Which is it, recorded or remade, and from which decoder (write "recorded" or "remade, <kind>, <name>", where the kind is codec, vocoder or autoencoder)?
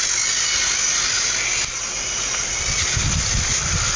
recorded